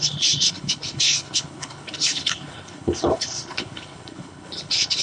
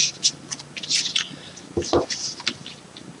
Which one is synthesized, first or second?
first